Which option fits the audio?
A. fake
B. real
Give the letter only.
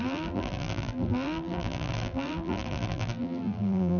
A